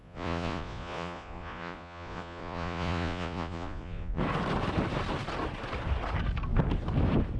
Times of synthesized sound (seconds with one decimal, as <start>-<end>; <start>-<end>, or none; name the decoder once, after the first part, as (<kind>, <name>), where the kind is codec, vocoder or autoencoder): 0.0-4.2 (vocoder, Vocos)